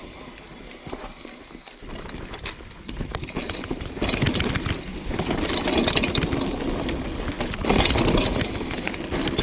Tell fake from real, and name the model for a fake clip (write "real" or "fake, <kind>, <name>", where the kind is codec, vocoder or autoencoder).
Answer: real